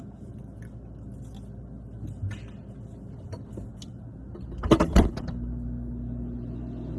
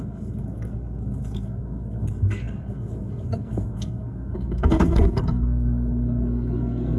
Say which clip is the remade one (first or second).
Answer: second